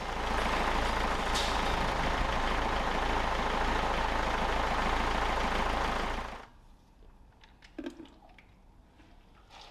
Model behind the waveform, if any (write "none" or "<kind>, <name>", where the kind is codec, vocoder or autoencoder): none